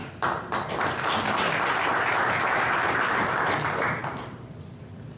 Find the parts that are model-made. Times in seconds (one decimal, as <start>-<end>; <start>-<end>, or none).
none